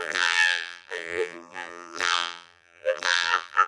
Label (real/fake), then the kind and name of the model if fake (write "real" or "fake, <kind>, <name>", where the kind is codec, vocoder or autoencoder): fake, vocoder, BigVGAN v2